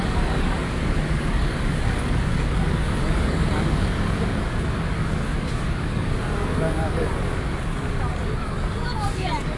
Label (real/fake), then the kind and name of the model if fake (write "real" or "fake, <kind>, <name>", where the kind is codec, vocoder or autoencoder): fake, codec, DAC